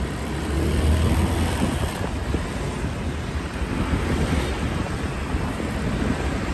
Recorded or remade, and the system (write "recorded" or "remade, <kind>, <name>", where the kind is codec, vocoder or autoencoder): recorded